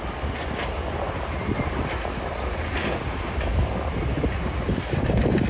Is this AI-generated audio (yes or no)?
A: no